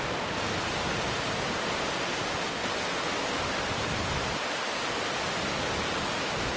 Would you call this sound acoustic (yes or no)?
yes